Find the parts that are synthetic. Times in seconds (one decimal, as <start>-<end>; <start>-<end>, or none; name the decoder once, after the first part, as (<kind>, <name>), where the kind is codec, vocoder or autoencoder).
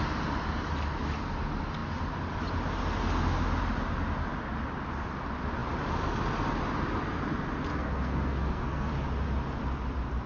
7.7-8.9 (codec, SNAC)